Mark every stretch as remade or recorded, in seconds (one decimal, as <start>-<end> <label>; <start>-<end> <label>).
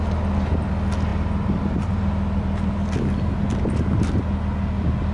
0.0-5.1 recorded